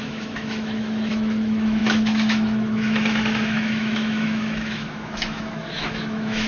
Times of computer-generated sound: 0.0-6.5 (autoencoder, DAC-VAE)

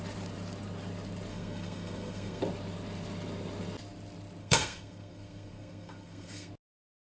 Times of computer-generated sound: 1.3-2.4 (codec, SNAC); 4.4-6.5

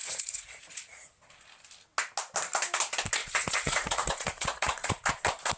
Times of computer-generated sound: 0.0-1.1 (vocoder, Vocos); 3.2-5.1